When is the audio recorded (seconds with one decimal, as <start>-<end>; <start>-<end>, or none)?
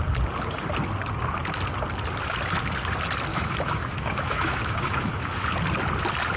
0.0-3.3; 5.4-6.4